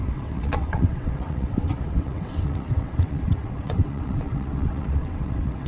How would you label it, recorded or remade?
remade